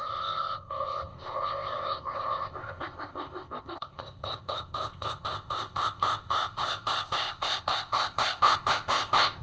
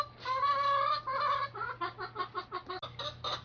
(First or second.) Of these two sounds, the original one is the second